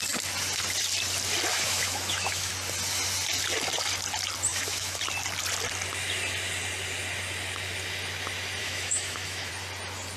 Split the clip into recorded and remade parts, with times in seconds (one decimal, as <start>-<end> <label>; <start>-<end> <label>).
0.0-1.5 recorded; 1.5-2.5 remade; 2.5-4.5 recorded; 4.5-5.0 remade; 5.0-8.6 recorded; 8.6-9.5 remade; 9.5-10.2 recorded